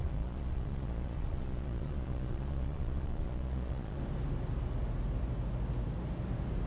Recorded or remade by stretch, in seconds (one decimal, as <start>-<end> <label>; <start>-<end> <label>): 0.0-4.0 remade; 4.0-6.7 recorded